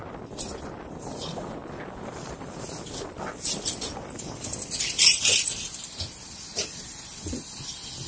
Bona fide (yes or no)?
yes